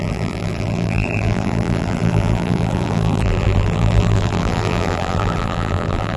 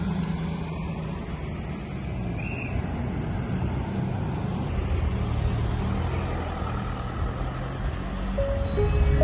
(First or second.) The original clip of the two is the second